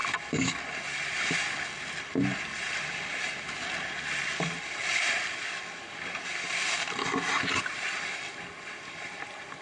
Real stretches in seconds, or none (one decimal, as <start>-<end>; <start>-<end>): 0.0-9.6